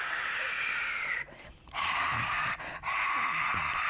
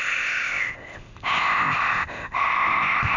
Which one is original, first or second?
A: first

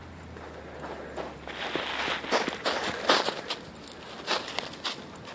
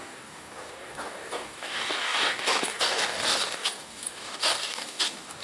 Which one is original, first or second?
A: first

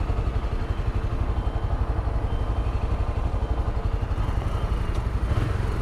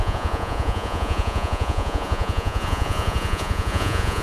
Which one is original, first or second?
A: first